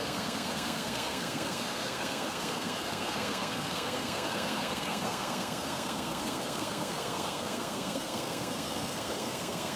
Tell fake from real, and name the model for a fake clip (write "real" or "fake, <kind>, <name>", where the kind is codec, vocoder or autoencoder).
fake, codec, SNAC